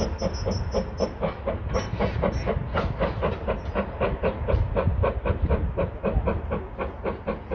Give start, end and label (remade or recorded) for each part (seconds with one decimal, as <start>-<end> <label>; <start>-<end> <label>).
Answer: 0.0-7.5 recorded